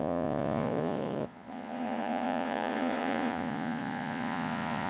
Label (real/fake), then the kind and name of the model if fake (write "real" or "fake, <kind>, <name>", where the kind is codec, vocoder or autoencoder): fake, vocoder, Vocos